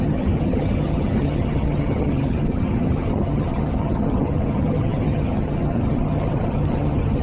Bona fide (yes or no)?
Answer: no